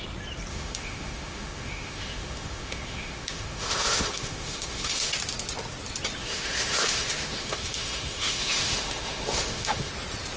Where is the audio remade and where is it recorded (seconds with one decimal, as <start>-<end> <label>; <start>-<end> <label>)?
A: 0.0-0.5 recorded; 0.5-5.1 remade; 5.1-6.2 recorded; 6.2-9.9 remade; 9.9-10.4 recorded